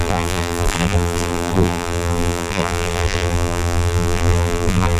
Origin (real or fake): fake